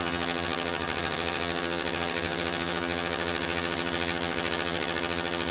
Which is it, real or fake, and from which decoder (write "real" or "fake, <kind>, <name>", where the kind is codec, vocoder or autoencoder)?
fake, vocoder, HiFi-GAN